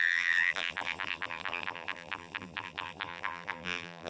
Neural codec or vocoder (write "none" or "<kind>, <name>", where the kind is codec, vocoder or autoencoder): vocoder, BigVGAN v2